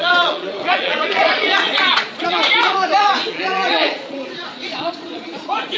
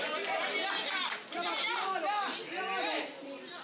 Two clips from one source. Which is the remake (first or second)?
first